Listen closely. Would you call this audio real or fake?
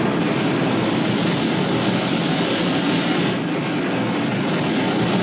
real